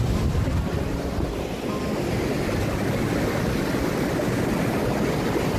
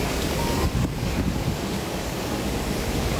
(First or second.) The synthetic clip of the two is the second